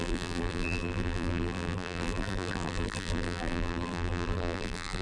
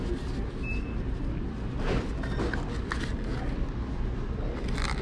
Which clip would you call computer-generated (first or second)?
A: first